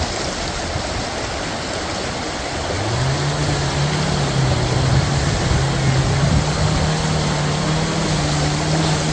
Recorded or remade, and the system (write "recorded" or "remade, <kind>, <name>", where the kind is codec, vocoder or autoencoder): recorded